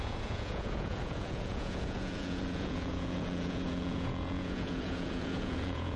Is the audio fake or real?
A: fake